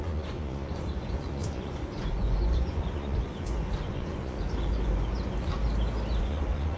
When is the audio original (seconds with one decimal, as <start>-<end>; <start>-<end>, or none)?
5.6-6.2